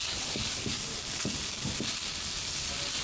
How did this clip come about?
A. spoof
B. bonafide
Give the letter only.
B